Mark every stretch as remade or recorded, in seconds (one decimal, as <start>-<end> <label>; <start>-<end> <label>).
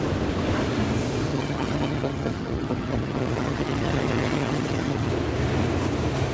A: 0.0-1.3 recorded; 1.3-5.1 remade; 5.1-6.3 recorded